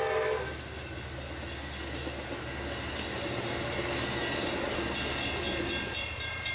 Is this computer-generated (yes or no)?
no